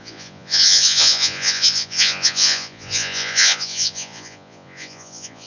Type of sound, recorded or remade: remade